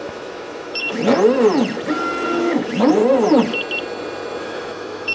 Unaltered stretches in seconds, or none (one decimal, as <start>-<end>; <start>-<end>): 1.0-2.4; 3.0-4.4